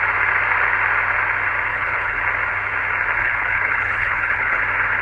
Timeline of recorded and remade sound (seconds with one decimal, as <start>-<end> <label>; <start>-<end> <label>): 0.0-1.7 recorded; 1.7-2.2 remade; 2.2-3.2 recorded; 3.2-4.6 remade; 4.6-5.0 recorded